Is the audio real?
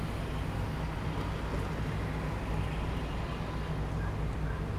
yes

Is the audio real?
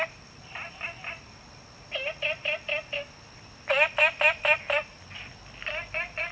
yes